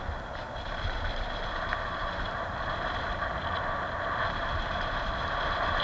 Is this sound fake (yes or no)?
no